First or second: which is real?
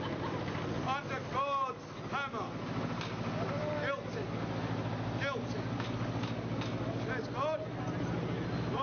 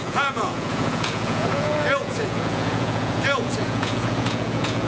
first